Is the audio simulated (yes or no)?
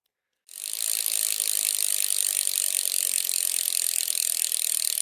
no